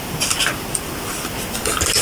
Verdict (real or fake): real